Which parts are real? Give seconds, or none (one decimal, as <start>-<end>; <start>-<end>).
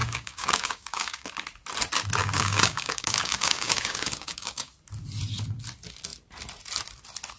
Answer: 1.3-2.2; 4.7-7.4